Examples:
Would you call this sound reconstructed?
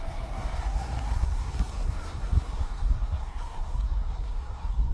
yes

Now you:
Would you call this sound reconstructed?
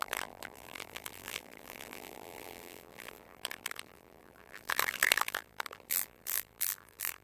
yes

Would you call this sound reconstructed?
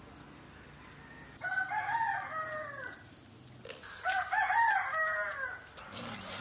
no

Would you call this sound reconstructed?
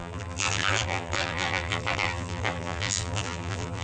yes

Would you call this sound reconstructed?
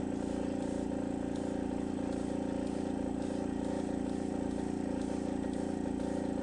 no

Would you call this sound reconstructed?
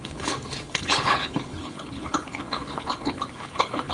yes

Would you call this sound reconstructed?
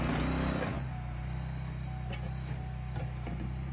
no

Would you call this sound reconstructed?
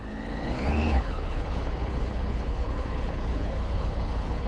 yes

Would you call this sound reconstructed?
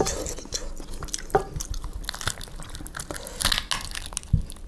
no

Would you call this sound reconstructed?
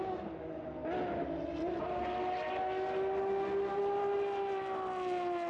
no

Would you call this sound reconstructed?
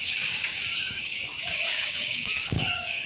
yes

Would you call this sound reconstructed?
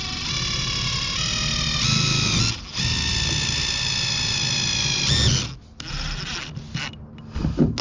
no